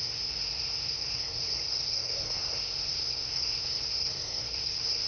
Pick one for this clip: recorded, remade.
remade